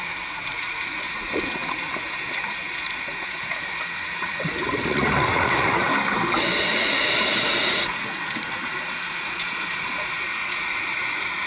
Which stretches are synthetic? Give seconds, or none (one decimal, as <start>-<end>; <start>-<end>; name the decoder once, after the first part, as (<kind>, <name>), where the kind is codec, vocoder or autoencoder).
0.0-5.9 (vocoder, Vocos); 6.6-11.5